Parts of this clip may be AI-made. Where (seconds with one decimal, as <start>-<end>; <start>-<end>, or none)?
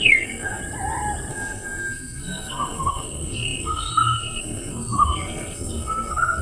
0.0-0.6; 1.3-6.4